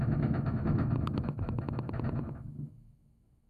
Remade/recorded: remade